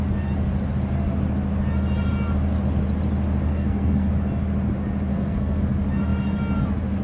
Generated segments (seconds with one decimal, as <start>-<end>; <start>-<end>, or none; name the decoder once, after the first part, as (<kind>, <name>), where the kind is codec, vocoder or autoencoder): 3.5-4.1 (codec, SNAC); 5.1-5.6